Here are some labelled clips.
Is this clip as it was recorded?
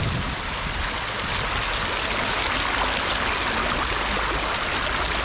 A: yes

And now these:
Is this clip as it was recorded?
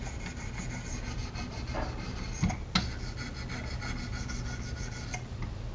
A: yes